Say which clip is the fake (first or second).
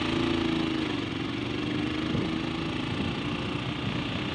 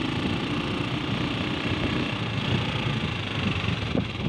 second